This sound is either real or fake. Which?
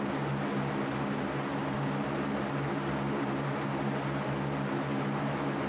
real